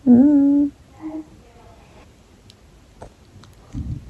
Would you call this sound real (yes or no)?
yes